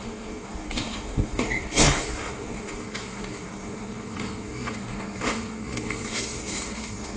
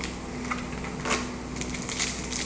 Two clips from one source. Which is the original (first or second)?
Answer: second